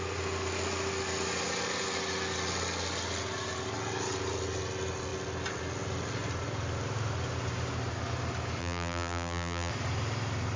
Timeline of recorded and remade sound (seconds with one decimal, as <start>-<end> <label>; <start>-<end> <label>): 0.0-8.6 recorded; 8.6-9.7 remade; 9.7-10.6 recorded